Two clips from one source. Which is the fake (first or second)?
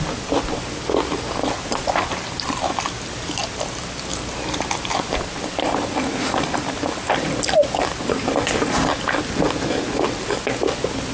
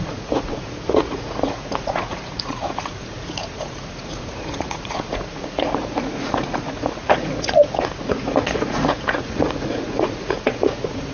second